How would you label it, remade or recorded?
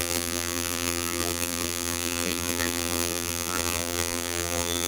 remade